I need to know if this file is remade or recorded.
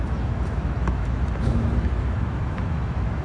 remade